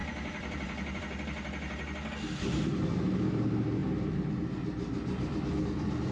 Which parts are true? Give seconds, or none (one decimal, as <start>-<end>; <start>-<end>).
1.0-6.1

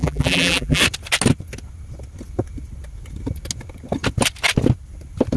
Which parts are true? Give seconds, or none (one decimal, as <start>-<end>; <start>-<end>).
0.8-5.4

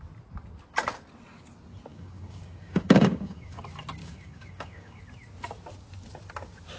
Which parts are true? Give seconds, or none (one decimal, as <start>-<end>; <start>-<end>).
0.0-1.9; 3.6-4.0; 5.0-6.8

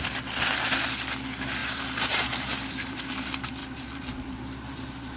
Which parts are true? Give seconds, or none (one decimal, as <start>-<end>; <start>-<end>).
0.0-1.6; 3.1-3.6

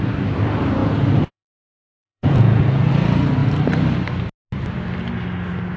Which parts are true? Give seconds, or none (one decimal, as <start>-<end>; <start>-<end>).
0.0-0.8; 2.9-5.8

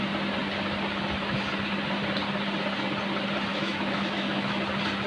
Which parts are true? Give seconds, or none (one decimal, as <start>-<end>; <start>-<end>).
0.0-3.5; 4.6-5.1

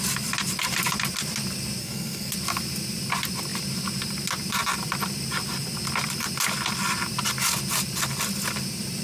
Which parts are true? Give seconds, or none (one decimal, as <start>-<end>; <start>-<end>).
0.0-1.8; 2.3-9.0

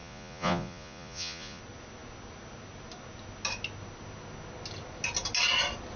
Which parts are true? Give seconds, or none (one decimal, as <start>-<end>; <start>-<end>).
1.6-6.0